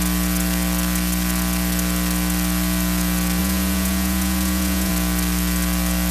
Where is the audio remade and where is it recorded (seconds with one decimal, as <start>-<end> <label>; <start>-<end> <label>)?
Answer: 0.0-3.4 recorded; 3.4-4.9 remade; 4.9-6.1 recorded